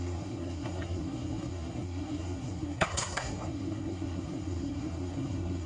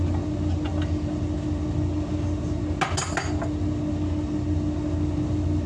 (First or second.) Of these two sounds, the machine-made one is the first